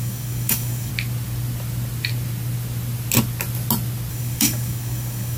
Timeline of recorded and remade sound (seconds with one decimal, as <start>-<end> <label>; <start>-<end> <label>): 0.0-0.9 remade; 0.9-4.1 recorded; 4.1-5.4 remade